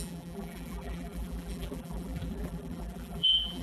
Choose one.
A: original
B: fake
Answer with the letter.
B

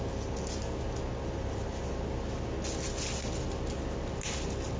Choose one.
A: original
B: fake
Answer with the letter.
A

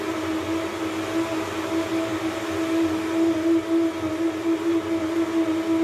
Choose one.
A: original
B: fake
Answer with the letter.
A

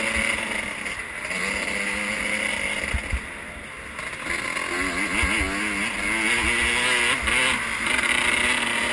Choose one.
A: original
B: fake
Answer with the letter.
A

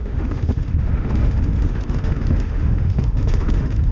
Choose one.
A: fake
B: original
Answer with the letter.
A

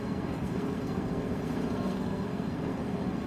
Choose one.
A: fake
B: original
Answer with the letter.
A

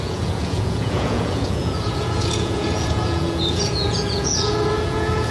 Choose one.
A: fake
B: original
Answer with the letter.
A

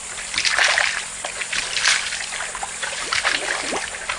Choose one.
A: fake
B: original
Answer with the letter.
B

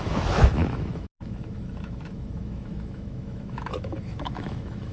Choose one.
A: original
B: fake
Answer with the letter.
B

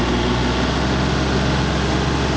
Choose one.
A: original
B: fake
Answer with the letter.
A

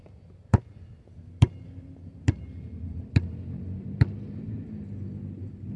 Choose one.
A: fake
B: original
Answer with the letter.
B